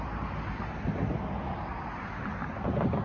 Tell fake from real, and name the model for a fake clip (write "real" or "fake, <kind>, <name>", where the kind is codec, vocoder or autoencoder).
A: real